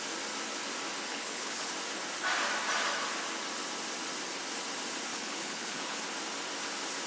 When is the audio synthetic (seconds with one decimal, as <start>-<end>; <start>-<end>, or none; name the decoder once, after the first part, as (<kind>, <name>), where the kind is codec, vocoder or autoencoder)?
1.1-1.7 (codec, HILCodec); 5.1-6.0